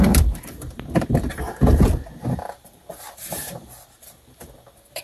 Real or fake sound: fake